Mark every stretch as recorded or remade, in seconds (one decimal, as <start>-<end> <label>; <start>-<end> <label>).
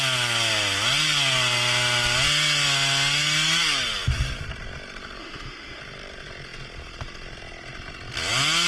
0.0-5.2 recorded; 5.2-5.8 remade; 5.8-8.7 recorded